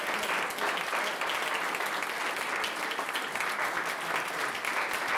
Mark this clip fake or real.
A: real